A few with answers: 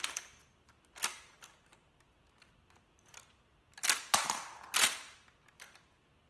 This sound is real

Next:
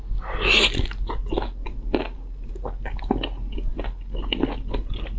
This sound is real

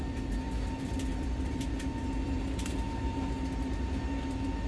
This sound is real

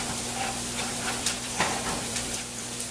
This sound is fake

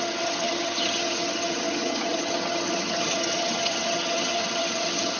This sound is fake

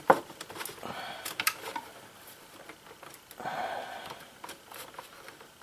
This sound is real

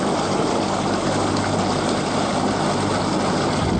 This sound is real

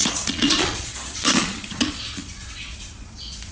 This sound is fake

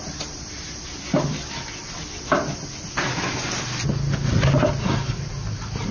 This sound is real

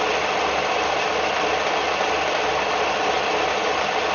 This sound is real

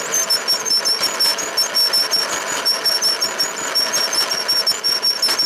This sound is real